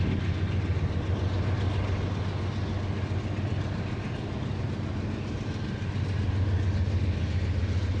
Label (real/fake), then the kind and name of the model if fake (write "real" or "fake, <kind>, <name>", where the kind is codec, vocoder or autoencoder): real